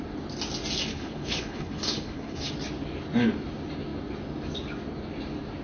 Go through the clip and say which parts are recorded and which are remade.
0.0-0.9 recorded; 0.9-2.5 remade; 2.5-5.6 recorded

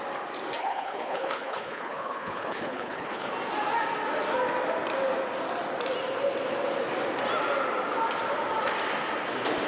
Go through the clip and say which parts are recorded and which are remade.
0.0-0.6 recorded; 0.6-3.3 remade; 3.3-9.7 recorded

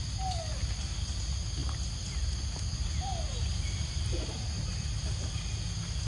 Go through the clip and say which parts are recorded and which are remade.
0.0-6.1 recorded

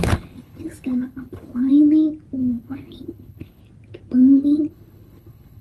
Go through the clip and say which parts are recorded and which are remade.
0.0-1.7 remade; 1.7-2.4 recorded; 2.4-3.6 remade; 3.6-4.7 recorded; 4.7-5.6 remade